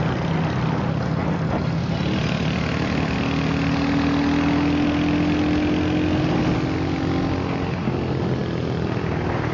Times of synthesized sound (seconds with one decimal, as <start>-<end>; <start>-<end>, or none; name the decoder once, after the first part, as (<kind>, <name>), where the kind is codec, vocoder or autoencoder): none

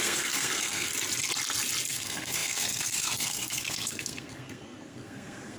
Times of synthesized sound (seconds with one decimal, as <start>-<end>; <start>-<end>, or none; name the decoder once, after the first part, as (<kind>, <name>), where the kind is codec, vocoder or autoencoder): 0.0-0.9 (codec, SNAC); 1.9-5.6

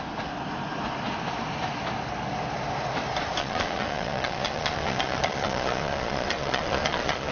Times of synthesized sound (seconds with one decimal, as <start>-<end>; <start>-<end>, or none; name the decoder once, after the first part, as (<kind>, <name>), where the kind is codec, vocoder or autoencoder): 3.4-7.3 (vocoder, Vocos)